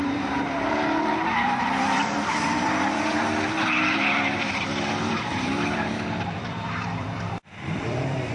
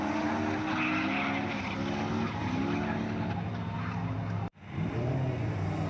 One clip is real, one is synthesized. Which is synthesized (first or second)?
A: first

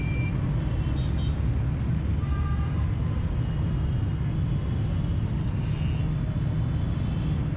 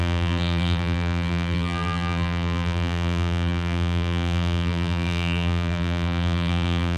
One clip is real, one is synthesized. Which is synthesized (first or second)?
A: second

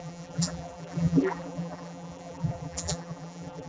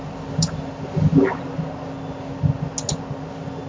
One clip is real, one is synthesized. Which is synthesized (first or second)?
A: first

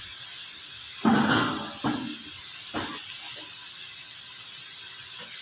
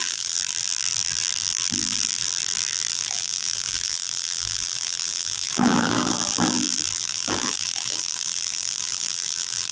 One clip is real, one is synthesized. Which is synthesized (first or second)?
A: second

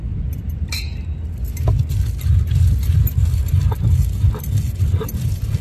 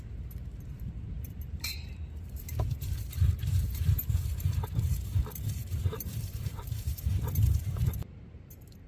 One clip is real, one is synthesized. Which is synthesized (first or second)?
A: second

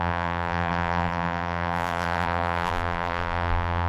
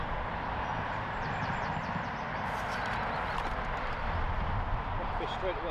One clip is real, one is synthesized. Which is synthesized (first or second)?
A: first